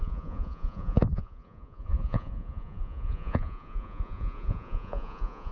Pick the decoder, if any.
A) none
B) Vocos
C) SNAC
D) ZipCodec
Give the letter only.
B